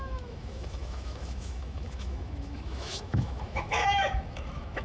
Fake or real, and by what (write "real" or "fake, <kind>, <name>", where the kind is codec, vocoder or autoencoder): fake, autoencoder, DAC-VAE